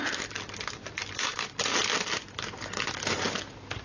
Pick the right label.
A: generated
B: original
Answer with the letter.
B